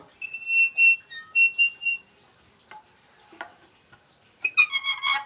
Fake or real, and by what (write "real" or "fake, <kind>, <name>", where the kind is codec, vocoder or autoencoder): real